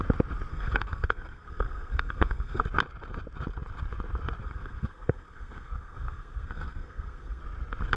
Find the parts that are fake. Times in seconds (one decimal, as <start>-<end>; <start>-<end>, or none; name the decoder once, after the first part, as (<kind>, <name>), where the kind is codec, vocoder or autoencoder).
0.5-2.6 (codec, SNAC); 4.4-7.4

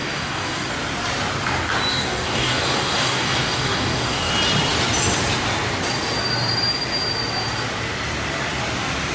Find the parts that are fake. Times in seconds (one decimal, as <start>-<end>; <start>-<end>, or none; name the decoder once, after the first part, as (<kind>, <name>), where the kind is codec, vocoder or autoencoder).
0.0-0.7 (codec, DAC); 1.9-4.3